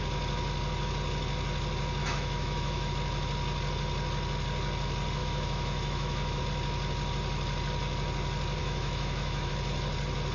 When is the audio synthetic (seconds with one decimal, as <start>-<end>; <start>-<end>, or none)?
2.0-2.9; 5.2-6.4; 8.6-9.5